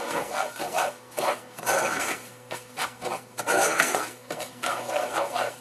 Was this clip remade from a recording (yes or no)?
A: yes